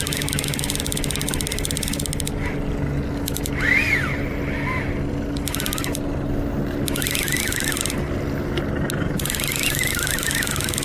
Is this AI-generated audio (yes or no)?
no